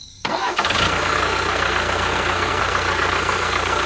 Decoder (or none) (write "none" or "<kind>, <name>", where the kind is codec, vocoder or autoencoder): codec, SNAC